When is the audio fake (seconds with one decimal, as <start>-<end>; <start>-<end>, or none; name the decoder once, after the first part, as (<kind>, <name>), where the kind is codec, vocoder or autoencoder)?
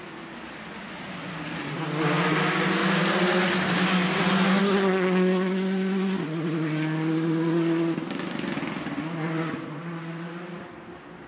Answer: none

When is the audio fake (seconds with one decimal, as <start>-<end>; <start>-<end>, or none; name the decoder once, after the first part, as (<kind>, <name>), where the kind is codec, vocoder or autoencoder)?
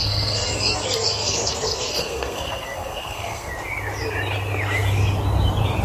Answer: 0.0-3.5 (codec, SNAC)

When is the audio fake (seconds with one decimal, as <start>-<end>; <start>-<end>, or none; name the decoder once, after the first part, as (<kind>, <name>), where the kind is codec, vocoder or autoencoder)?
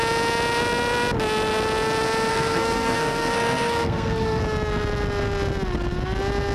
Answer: 2.3-4.4 (codec, SNAC)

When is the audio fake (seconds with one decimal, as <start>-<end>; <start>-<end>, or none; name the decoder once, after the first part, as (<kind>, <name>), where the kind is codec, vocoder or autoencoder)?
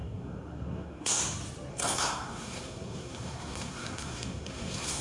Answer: 0.0-1.2 (codec, SNAC); 1.7-5.0